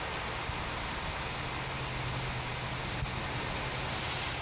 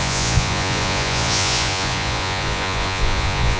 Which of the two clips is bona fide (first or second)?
first